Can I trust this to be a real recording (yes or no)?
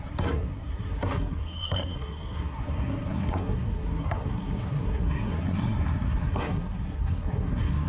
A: no